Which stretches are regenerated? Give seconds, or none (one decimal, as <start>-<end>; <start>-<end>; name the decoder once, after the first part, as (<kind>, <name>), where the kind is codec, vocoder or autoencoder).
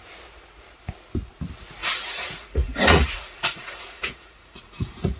1.8-5.2 (vocoder, Vocos)